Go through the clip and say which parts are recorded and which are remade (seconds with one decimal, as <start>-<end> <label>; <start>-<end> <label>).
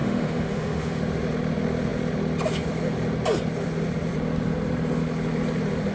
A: 0.0-1.0 remade; 1.0-5.9 recorded